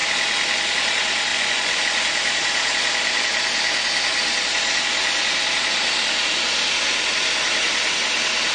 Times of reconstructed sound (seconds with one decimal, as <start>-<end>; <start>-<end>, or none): 1.3-1.8

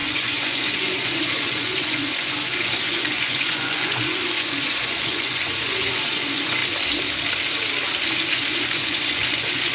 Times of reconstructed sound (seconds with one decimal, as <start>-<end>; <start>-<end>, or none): 0.0-6.6; 8.3-9.7

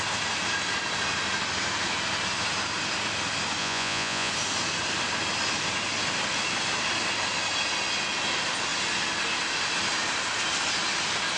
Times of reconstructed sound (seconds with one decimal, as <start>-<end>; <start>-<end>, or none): 3.6-4.3

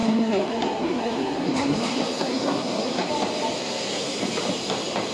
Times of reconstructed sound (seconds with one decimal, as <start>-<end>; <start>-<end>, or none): 0.0-3.1; 3.6-4.2